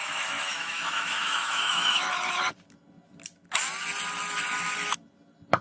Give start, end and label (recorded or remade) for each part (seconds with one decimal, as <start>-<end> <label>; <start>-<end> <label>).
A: 0.0-2.1 remade; 2.1-5.6 recorded